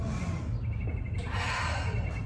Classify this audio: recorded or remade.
recorded